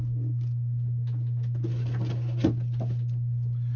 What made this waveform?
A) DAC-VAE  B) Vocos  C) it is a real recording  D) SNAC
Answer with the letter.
C